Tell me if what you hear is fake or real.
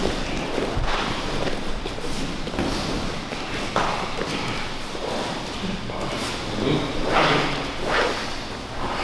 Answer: real